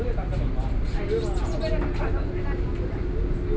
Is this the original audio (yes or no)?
yes